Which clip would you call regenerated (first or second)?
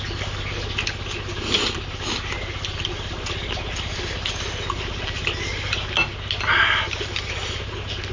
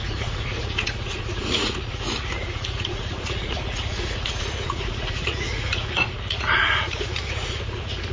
second